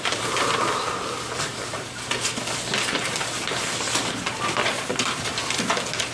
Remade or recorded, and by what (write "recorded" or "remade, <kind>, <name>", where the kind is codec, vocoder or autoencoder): recorded